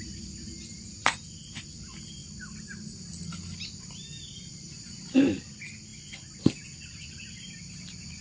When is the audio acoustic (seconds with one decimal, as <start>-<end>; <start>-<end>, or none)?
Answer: 0.0-8.2

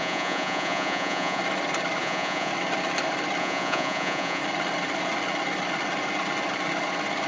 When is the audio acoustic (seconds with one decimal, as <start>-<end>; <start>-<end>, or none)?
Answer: 1.4-2.0; 2.5-3.4; 4.4-7.3